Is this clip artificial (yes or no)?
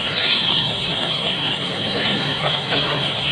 yes